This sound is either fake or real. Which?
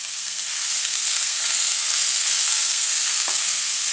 fake